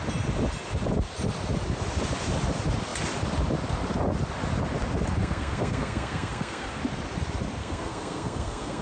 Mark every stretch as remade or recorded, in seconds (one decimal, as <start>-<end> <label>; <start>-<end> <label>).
0.0-5.2 recorded; 5.2-6.8 remade; 6.8-7.6 recorded; 7.6-8.8 remade